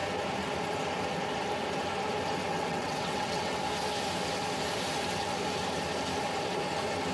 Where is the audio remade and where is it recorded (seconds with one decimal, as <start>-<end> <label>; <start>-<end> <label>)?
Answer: 0.0-2.5 recorded; 2.5-3.6 remade; 3.6-7.1 recorded